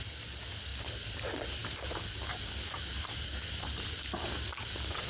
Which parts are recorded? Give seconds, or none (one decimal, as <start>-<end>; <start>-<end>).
0.0-5.1